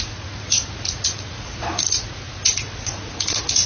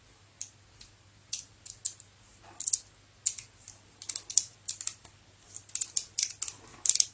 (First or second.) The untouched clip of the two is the second